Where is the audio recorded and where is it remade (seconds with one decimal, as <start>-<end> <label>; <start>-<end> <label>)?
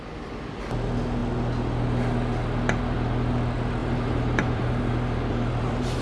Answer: 0.0-3.8 recorded; 3.8-4.6 remade; 4.6-5.3 recorded; 5.3-6.0 remade